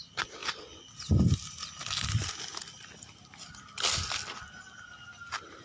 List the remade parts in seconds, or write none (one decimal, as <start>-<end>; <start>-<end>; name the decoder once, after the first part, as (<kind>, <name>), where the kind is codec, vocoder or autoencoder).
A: none